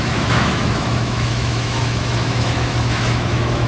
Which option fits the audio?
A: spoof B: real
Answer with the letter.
A